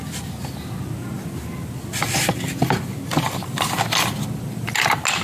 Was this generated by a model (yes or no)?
no